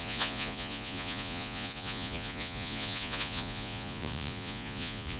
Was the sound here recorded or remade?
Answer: remade